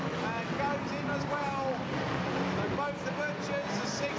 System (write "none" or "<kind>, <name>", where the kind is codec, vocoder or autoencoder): none